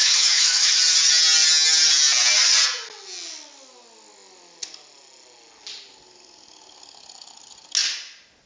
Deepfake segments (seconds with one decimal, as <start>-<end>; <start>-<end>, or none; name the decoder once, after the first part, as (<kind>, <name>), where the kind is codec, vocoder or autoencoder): 0.0-0.8 (autoencoder, DAC-VAE)